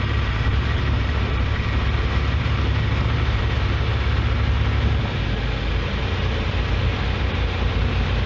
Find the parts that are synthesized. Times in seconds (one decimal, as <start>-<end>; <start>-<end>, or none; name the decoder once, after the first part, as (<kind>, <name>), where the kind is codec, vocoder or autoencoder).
0.0-3.9 (vocoder, BigVGAN v2); 6.0-8.3